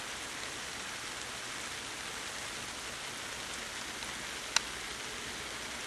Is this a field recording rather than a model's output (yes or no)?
yes